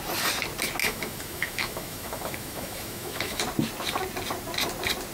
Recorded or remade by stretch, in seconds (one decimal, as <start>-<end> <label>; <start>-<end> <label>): 0.0-0.8 recorded; 0.8-3.4 remade; 3.4-5.1 recorded